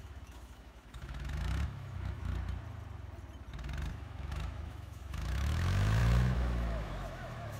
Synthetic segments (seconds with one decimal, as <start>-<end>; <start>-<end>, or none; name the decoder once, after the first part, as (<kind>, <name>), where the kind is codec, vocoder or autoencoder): 0.0-2.3 (autoencoder, DAC-VAE); 3.9-7.6